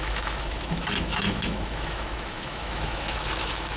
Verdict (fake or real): fake